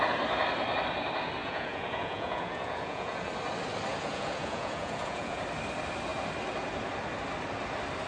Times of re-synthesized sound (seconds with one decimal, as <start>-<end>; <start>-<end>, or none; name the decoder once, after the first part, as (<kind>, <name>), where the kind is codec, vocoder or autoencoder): 1.4-3.3 (vocoder, Vocos); 3.9-5.4